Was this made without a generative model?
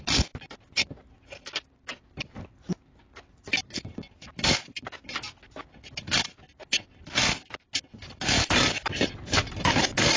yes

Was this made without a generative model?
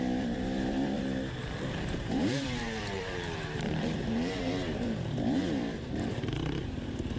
no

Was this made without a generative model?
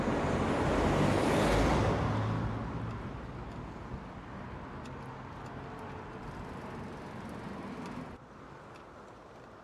yes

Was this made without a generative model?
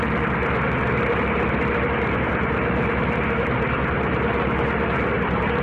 yes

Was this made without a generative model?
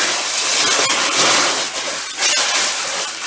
yes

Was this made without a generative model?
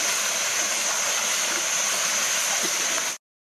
yes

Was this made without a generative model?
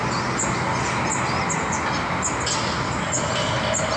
yes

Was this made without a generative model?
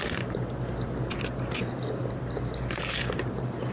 yes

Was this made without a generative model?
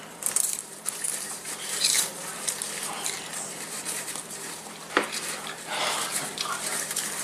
no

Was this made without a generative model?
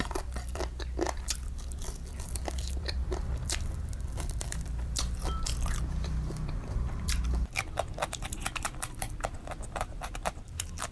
no